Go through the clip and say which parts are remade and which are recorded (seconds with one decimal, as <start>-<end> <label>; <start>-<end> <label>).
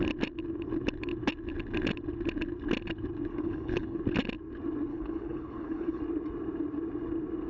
0.0-3.3 recorded; 3.3-4.0 remade; 4.0-4.9 recorded; 4.9-6.0 remade; 6.0-7.5 recorded